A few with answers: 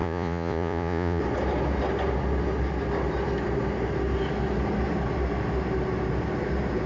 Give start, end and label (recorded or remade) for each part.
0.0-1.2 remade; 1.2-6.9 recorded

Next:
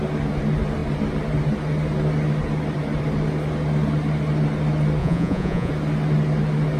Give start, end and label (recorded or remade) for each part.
0.0-5.0 recorded; 5.0-5.7 remade; 5.7-6.8 recorded

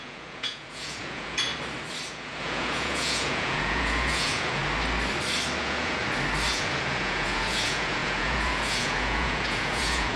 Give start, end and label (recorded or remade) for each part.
0.0-1.5 remade; 1.5-2.1 recorded; 2.1-4.6 remade; 4.6-5.6 recorded; 5.6-6.0 remade; 6.0-6.5 recorded; 6.5-10.2 remade

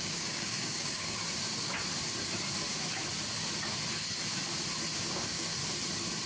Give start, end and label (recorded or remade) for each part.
0.0-1.2 remade; 1.2-5.0 recorded; 5.0-5.5 remade; 5.5-6.3 recorded

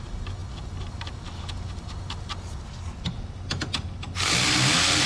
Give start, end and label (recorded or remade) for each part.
0.0-5.1 recorded

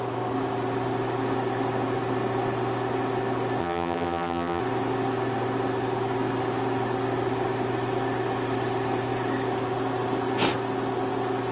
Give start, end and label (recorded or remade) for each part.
0.0-3.6 recorded; 3.6-4.6 remade; 4.6-11.5 recorded

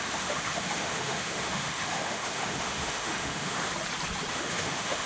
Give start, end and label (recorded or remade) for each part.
0.0-3.7 remade; 3.7-4.3 recorded; 4.3-5.1 remade

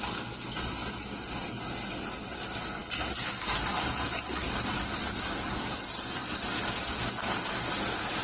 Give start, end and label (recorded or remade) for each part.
0.0-8.2 recorded